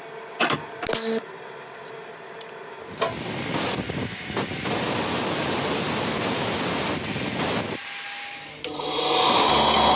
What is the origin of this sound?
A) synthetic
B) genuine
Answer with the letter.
B